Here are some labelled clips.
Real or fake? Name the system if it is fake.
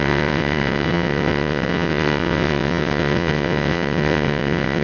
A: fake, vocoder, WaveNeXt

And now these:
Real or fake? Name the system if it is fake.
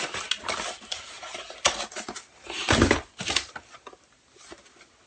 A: real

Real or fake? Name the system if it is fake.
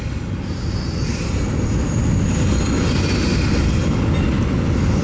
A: real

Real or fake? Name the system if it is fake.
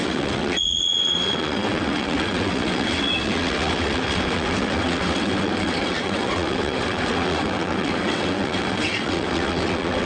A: fake, vocoder, WaveNeXt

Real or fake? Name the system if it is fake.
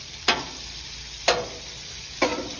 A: real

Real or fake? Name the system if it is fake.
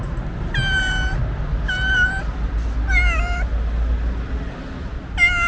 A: real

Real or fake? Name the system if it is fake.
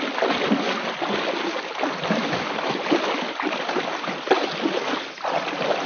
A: real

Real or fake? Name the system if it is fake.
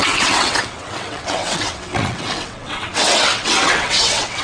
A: fake, vocoder, WaveNeXt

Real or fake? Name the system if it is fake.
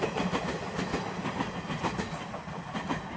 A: real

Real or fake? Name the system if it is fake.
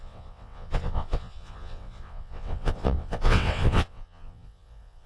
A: fake, vocoder, WaveNeXt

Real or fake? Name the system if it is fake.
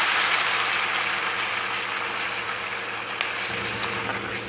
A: real